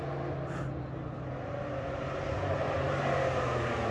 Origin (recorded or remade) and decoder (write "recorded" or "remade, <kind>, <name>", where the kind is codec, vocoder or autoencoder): recorded